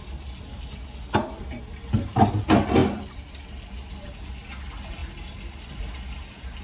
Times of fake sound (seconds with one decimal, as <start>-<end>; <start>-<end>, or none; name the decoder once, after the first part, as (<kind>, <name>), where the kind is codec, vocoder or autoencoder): none